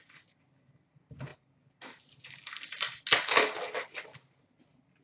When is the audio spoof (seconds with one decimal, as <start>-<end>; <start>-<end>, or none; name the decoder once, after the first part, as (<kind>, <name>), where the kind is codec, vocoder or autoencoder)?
none